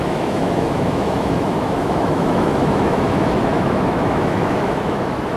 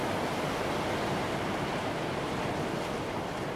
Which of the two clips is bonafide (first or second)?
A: second